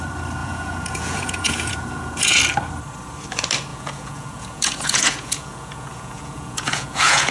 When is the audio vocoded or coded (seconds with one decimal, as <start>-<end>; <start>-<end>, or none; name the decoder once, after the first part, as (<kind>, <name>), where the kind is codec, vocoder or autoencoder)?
0.4-2.4 (vocoder, Vocos); 3.7-7.3